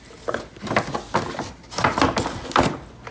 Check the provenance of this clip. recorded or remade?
recorded